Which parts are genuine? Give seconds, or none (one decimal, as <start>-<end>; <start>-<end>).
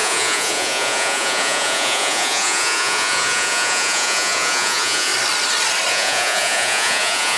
5.1-5.9